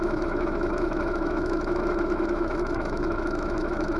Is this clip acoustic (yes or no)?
no